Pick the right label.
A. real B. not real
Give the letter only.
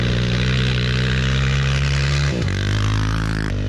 A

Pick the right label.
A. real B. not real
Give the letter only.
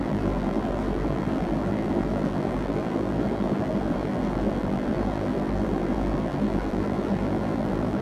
B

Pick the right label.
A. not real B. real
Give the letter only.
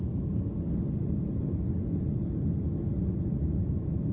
B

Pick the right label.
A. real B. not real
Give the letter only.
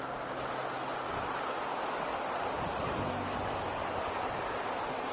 A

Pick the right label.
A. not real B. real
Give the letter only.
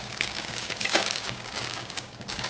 A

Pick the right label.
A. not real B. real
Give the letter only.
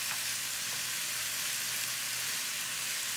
B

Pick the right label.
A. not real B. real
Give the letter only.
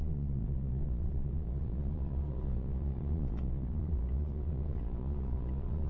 A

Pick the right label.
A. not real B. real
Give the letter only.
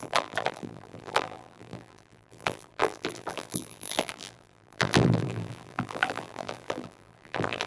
A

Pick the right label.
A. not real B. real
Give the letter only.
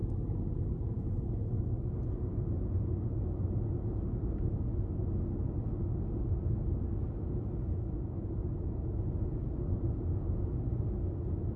B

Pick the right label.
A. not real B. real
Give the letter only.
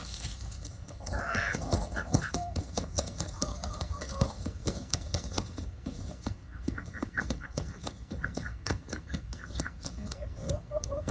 A